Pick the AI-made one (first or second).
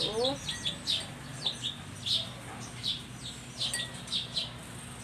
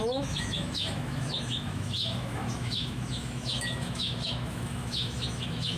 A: second